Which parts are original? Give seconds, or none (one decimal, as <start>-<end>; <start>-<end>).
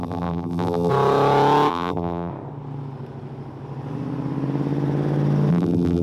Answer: 0.9-1.7; 2.3-5.5